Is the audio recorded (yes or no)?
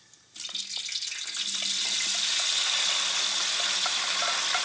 yes